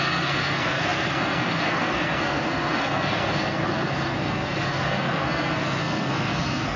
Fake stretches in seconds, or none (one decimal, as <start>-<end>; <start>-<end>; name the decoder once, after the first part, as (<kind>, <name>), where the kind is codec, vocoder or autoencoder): 0.0-6.8 (codec, SNAC)